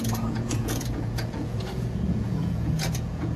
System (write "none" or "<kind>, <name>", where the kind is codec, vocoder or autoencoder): vocoder, Vocos